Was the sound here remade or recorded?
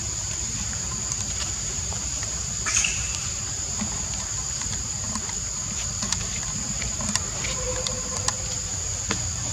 remade